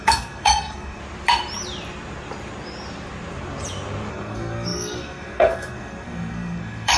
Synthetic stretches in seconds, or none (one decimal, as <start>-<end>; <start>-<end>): 0.0-1.0; 4.1-7.0